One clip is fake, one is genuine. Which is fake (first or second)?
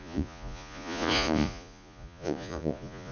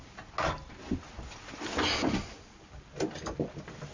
first